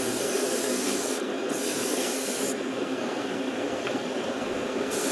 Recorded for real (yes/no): no